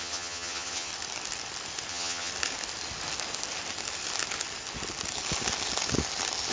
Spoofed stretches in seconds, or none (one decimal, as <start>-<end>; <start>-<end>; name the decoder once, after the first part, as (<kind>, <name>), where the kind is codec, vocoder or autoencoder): 0.0-0.9 (vocoder, HiFi-GAN); 1.9-2.3